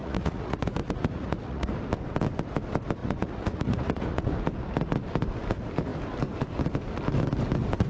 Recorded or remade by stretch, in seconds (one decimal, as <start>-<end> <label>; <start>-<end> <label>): 0.0-1.7 remade; 1.7-3.0 recorded; 3.0-4.3 remade; 4.3-7.9 recorded